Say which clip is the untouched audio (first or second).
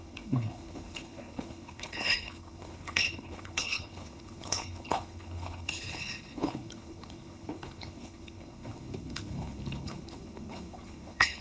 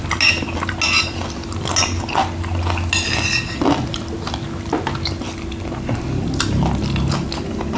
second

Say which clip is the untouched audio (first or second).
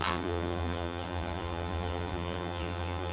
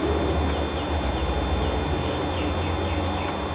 second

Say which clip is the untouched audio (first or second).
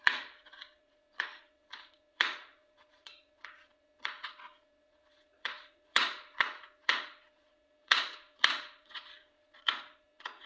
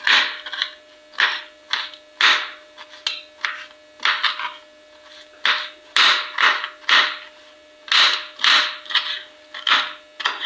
second